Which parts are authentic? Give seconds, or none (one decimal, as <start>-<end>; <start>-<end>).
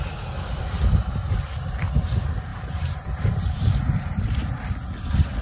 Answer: 0.0-2.5; 4.5-5.4